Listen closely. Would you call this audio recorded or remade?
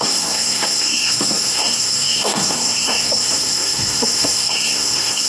remade